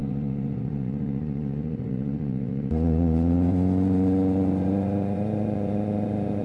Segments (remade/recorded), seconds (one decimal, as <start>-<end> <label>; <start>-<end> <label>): 0.0-6.4 remade